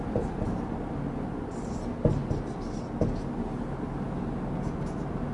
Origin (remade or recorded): recorded